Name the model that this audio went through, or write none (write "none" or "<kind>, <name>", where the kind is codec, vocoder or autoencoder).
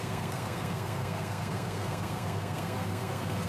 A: codec, SNAC